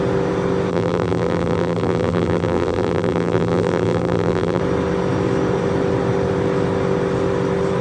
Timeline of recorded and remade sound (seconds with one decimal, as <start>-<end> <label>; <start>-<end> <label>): 0.0-0.7 recorded; 0.7-4.6 remade; 4.6-7.8 recorded